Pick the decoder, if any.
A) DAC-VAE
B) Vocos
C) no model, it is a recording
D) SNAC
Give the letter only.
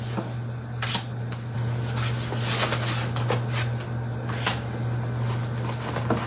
C